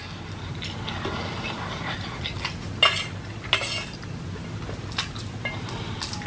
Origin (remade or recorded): recorded